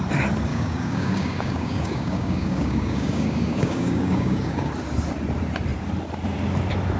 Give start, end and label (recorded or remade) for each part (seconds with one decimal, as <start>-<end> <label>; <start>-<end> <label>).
0.0-0.5 recorded; 0.5-4.7 remade; 4.7-7.0 recorded